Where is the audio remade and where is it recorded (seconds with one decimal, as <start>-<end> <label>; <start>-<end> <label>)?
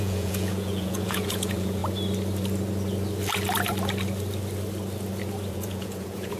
0.0-1.8 remade; 1.8-5.5 recorded; 5.5-6.4 remade